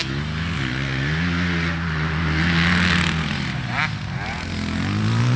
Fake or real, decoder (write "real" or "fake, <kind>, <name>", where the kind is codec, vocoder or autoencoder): real